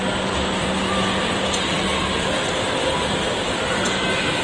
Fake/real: real